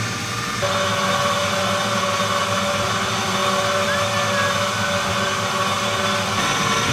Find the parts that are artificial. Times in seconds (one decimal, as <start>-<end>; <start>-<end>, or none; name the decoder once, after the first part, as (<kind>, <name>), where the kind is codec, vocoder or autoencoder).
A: none